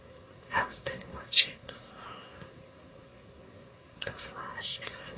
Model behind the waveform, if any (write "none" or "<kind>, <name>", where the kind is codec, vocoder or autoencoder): codec, SNAC